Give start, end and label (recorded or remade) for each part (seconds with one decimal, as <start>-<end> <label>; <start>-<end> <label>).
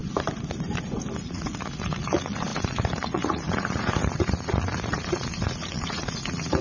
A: 0.0-1.2 recorded; 1.2-6.6 remade